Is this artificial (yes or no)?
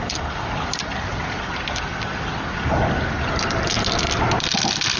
yes